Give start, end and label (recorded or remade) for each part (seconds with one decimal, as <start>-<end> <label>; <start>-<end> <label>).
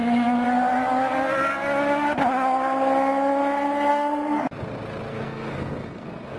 0.0-3.9 recorded; 3.9-4.5 remade; 4.5-5.1 recorded; 5.1-6.4 remade